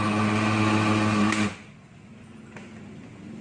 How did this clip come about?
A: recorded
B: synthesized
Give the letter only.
A